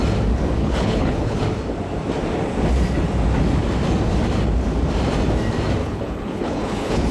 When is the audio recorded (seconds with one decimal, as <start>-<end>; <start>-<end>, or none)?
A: 0.0-0.6; 1.4-5.8